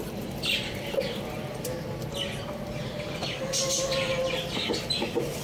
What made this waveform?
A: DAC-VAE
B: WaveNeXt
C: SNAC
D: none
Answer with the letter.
D